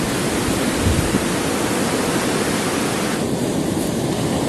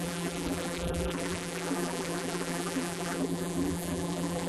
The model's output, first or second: second